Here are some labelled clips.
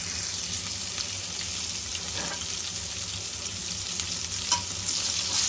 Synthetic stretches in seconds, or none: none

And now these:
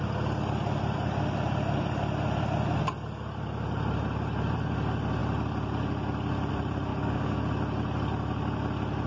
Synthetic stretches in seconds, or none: 6.9-7.4

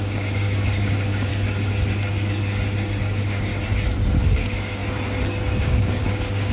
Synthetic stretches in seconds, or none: 0.0-1.3; 3.0-3.5; 4.2-4.8; 5.6-6.5